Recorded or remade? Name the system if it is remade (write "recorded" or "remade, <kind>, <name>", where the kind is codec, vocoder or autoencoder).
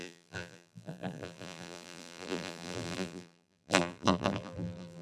remade, vocoder, BigVGAN v2